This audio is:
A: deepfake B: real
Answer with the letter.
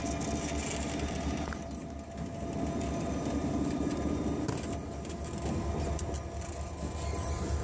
B